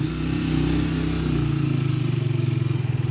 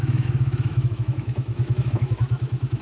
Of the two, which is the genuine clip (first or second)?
first